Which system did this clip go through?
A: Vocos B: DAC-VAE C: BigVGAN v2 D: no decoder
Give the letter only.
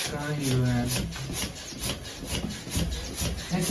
D